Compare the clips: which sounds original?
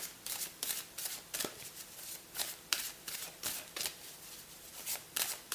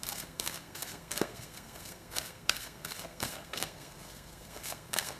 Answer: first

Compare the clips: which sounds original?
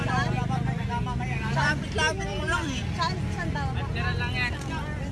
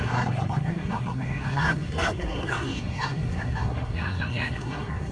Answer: first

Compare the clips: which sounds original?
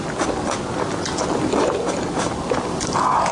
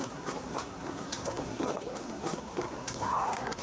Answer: first